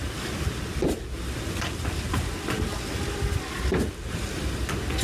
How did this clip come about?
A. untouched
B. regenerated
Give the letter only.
A